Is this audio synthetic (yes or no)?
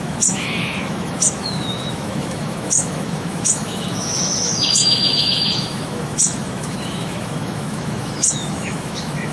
yes